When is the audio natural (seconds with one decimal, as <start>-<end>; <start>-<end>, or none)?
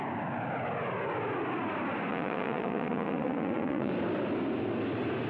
0.0-2.1; 3.9-5.3